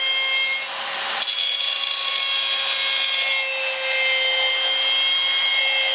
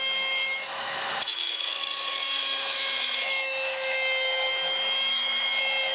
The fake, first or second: second